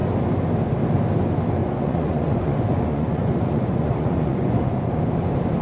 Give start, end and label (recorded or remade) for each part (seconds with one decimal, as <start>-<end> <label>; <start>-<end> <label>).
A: 0.0-1.6 recorded; 1.6-5.0 remade; 5.0-5.6 recorded

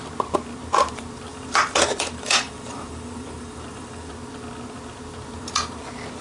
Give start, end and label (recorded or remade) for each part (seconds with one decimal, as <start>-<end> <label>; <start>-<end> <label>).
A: 0.0-1.3 recorded; 1.3-4.1 remade; 4.1-6.2 recorded

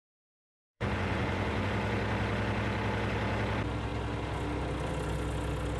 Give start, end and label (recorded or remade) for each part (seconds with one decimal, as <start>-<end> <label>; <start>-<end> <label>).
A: 0.0-0.4 recorded; 0.4-1.7 remade; 1.7-5.8 recorded